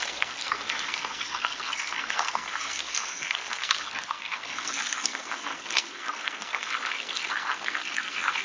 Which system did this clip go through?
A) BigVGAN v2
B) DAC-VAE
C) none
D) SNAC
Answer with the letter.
D